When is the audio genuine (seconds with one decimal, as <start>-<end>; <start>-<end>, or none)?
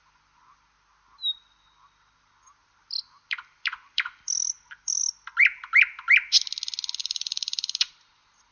0.0-2.6; 5.0-7.0; 7.9-8.5